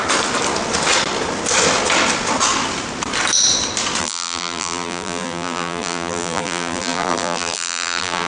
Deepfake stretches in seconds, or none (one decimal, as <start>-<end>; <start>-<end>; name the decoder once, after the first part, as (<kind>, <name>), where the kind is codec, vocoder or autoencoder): 4.0-8.3 (vocoder, BigVGAN v2)